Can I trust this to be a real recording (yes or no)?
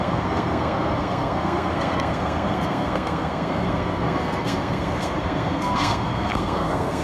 no